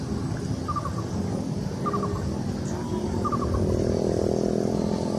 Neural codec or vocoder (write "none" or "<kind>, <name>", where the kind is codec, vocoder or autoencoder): none